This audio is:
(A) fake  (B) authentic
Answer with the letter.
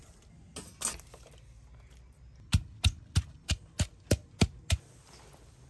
B